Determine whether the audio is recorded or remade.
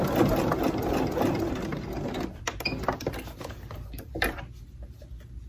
recorded